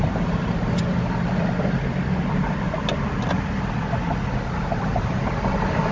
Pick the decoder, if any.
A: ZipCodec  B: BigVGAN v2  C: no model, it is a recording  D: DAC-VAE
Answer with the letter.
C